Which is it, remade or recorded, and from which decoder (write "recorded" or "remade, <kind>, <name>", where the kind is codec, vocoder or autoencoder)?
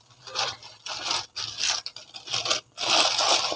recorded